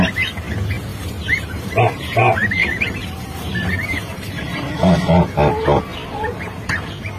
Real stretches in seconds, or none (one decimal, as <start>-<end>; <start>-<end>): 0.0-0.9; 1.6-2.4; 4.7-7.2